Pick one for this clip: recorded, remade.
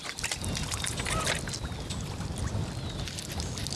recorded